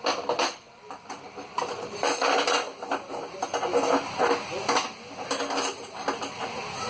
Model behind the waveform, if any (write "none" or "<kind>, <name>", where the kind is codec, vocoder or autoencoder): none